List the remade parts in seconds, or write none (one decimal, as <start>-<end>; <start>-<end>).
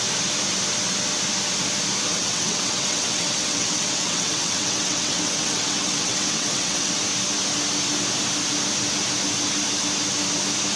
2.1-6.9